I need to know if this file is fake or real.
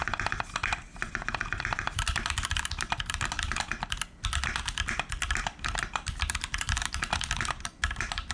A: real